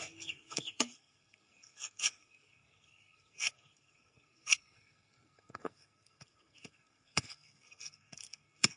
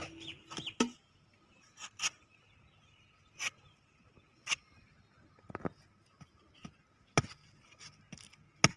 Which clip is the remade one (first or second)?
first